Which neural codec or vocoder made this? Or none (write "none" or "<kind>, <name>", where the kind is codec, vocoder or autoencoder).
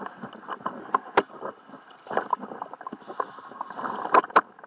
none